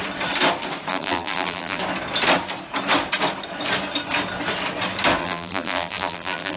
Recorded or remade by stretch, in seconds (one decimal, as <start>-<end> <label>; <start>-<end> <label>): 0.0-0.9 recorded; 0.9-1.8 remade; 1.8-5.2 recorded; 5.2-6.6 remade